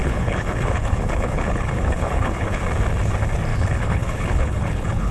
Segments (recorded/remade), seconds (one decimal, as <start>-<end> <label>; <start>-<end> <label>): 0.0-2.6 remade; 2.6-3.5 recorded; 3.5-5.1 remade

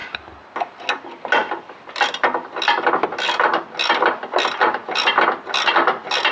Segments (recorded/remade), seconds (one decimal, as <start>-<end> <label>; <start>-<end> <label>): 0.0-6.3 recorded

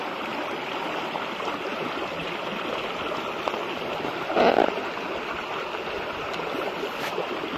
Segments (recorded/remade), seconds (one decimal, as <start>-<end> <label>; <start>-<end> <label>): 0.0-7.6 recorded

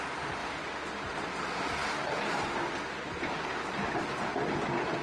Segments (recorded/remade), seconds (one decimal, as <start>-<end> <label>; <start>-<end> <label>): 0.0-5.0 recorded

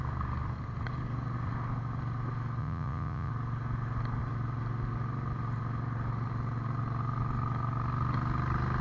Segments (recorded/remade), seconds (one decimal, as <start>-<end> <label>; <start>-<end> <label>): 0.0-2.6 recorded; 2.6-3.3 remade; 3.3-8.8 recorded

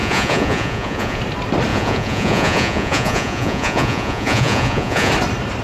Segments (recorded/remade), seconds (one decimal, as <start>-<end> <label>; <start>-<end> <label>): 0.0-1.2 remade; 1.2-1.7 recorded; 1.7-5.1 remade; 5.1-5.6 recorded